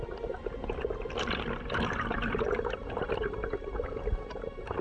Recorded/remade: recorded